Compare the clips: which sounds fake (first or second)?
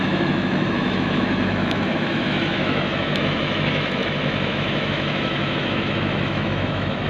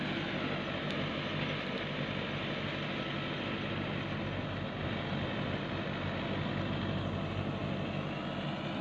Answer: first